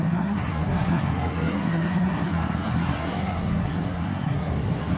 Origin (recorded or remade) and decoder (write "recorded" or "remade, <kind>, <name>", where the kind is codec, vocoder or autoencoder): remade, codec, SNAC